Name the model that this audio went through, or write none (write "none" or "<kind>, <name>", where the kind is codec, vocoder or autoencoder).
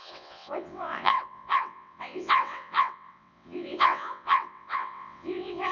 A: vocoder, WaveNeXt